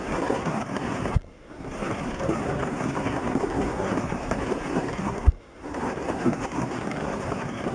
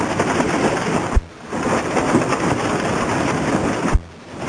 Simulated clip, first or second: first